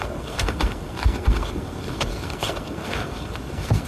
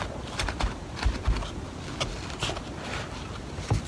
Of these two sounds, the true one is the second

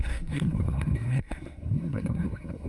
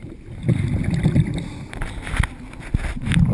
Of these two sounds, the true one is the second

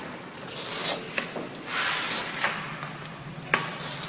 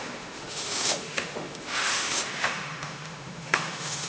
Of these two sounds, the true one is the first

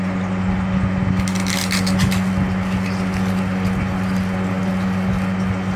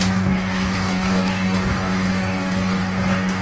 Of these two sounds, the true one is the first